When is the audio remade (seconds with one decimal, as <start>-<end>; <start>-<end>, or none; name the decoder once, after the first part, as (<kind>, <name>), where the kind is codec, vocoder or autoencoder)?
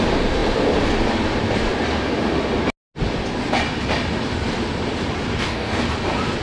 5.3-5.8 (codec, DAC)